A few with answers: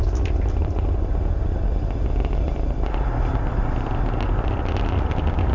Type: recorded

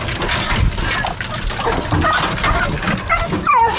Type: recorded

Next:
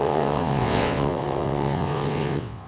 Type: remade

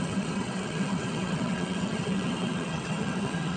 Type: remade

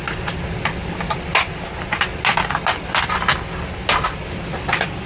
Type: recorded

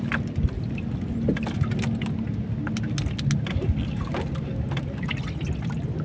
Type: recorded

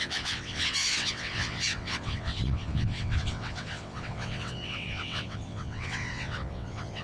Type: remade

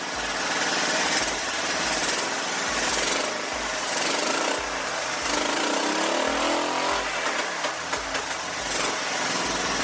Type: recorded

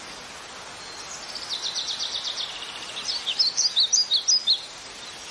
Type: recorded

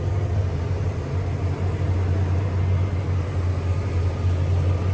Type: recorded